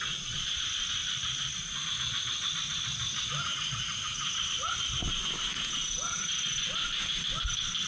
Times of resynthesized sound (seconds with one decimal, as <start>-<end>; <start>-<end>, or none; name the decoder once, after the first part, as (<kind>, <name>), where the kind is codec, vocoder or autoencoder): 5.5-6.2 (vocoder, Vocos)